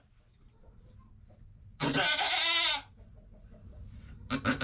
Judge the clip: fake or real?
real